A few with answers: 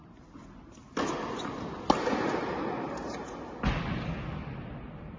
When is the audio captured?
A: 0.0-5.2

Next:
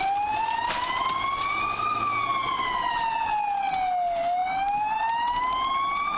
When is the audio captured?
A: 0.0-6.2

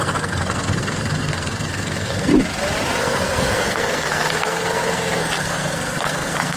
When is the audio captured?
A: 2.3-3.0